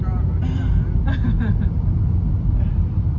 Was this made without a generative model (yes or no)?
yes